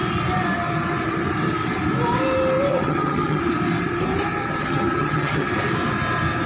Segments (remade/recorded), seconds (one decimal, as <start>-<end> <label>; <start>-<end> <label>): 0.0-2.7 recorded; 2.7-3.4 remade; 3.4-4.4 recorded; 4.4-5.5 remade; 5.5-6.5 recorded